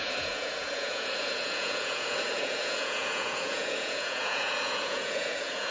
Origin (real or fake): fake